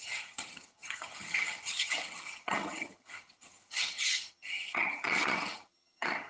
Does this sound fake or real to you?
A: fake